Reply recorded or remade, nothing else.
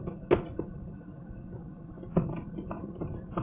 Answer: recorded